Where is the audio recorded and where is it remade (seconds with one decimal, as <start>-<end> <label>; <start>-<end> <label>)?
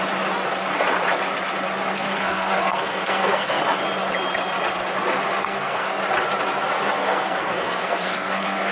0.0-1.9 recorded; 1.9-3.6 remade; 3.6-5.4 recorded; 5.4-6.0 remade; 6.0-7.0 recorded; 7.0-8.7 remade